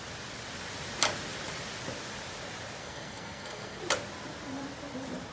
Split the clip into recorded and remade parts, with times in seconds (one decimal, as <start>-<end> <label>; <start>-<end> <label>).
0.0-2.8 recorded; 2.8-3.8 remade; 3.8-5.3 recorded